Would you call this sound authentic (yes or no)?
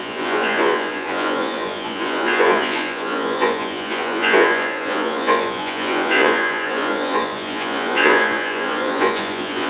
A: no